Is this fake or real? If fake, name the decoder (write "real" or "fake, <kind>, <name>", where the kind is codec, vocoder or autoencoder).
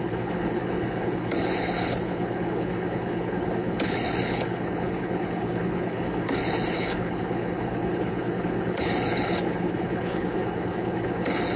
fake, codec, HILCodec